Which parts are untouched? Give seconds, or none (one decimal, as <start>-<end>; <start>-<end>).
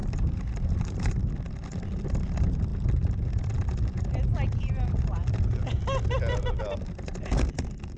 1.2-8.0